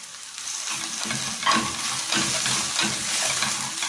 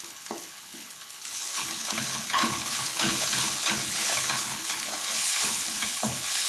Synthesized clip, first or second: second